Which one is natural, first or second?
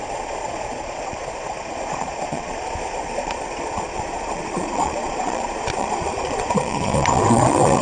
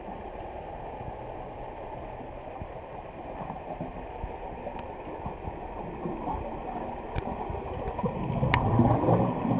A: second